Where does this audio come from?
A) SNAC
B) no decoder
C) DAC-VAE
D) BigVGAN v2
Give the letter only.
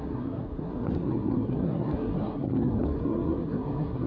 A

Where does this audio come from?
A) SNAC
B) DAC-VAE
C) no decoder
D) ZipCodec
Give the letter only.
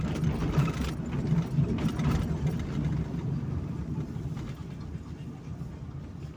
C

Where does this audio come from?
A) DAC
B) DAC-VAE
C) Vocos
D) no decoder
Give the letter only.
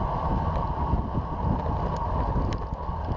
D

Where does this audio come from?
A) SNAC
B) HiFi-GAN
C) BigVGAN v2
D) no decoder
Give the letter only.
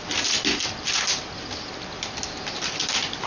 D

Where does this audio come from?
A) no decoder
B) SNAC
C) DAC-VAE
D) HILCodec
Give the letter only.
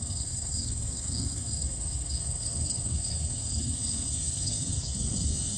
B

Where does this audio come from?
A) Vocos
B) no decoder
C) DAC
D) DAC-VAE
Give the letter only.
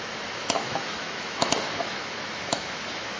D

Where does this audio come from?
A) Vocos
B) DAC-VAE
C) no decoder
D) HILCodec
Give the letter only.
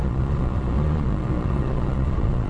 A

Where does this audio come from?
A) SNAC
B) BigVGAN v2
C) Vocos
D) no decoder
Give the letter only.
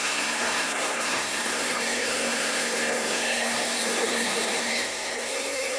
A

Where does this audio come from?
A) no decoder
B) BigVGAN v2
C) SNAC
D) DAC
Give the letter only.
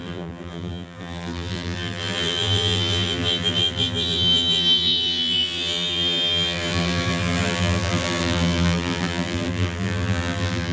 B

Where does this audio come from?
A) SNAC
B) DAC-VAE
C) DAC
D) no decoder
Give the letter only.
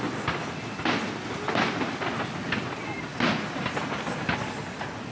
D